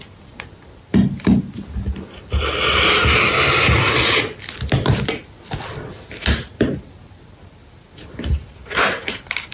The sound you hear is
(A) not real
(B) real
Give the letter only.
B